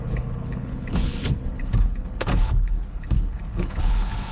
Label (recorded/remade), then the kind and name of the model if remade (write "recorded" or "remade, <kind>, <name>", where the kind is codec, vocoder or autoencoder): remade, codec, HILCodec